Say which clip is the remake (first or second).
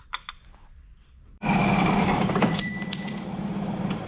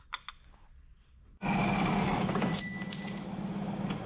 first